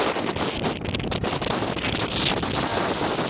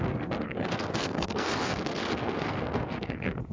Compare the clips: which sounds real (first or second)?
first